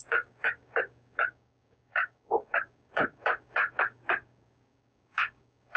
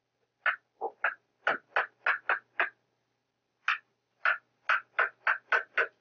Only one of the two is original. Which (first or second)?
second